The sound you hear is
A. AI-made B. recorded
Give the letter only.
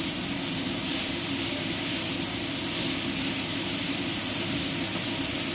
B